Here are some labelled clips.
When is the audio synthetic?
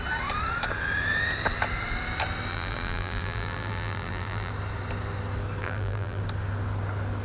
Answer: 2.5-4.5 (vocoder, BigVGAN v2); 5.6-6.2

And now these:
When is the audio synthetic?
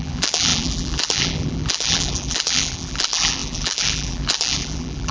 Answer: 0.0-5.1 (vocoder, BigVGAN v2)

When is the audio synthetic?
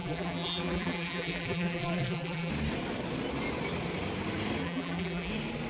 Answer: 0.0-2.5 (vocoder, BigVGAN v2); 4.6-5.3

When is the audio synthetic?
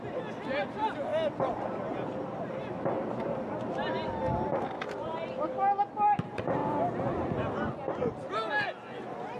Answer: none